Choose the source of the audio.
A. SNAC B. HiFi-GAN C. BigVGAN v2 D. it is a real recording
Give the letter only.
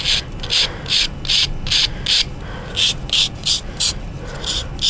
D